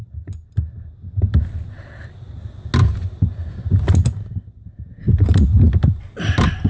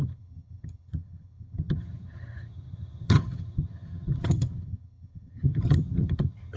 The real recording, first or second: first